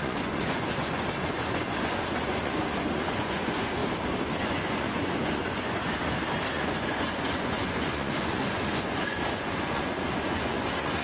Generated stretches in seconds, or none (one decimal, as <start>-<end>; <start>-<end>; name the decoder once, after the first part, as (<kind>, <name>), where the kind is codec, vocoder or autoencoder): 0.0-3.8 (vocoder, Vocos); 4.3-6.0; 6.5-11.0